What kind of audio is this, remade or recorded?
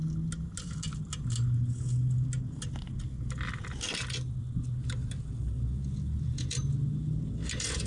recorded